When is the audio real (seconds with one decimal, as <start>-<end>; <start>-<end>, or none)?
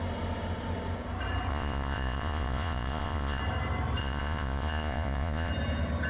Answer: 0.0-1.5; 3.4-4.0; 5.5-6.1